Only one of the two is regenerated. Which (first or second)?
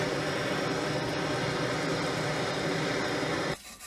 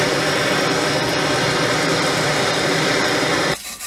second